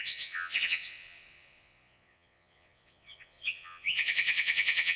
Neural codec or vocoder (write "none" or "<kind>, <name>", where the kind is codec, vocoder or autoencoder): vocoder, Vocos